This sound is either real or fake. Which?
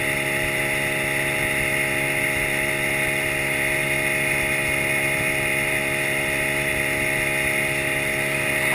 real